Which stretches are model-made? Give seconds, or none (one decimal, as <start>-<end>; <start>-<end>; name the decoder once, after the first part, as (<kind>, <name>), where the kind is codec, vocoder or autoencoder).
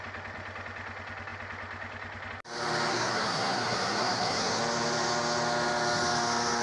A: 2.9-4.6 (codec, SNAC)